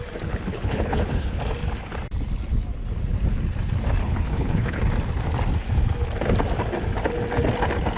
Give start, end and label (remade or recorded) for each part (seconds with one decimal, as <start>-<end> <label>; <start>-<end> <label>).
0.0-0.5 recorded; 0.5-1.4 remade; 1.4-4.0 recorded; 4.0-4.8 remade; 4.8-8.0 recorded